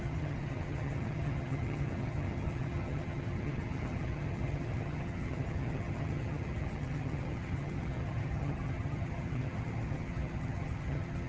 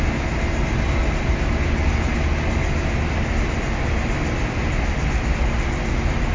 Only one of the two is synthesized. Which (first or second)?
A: first